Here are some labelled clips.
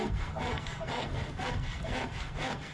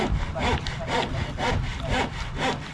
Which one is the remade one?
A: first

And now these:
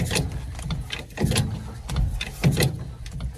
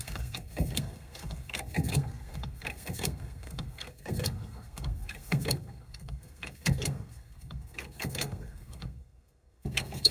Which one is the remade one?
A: second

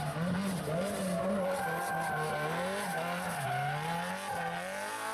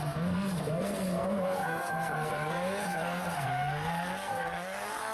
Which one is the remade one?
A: second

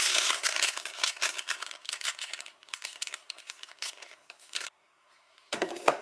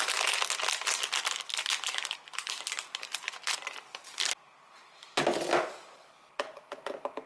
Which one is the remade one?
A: first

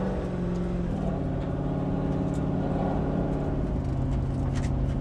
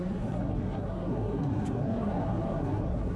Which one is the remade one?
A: second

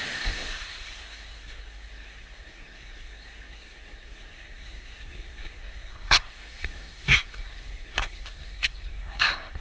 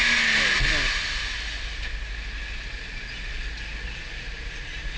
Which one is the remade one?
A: first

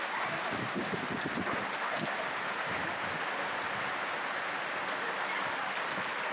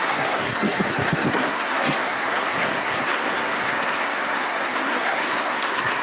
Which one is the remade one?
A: second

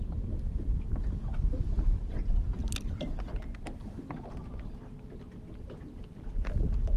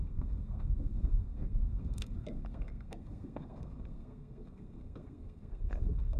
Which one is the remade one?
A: second